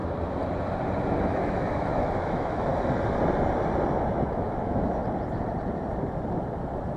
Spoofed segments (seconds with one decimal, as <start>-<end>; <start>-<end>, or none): 1.2-2.7; 4.4-5.0